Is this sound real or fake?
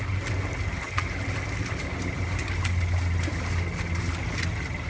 real